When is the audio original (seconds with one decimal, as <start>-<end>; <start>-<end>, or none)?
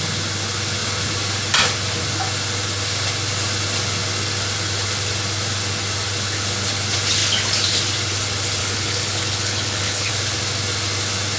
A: 0.0-8.6; 10.1-11.4